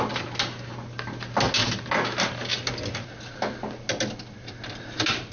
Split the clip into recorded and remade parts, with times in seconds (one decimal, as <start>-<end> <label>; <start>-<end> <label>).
0.0-5.3 recorded